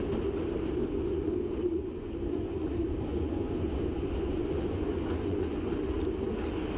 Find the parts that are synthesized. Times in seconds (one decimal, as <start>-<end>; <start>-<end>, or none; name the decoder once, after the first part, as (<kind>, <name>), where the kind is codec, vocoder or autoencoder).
0.8-2.7 (vocoder, Vocos); 3.1-5.8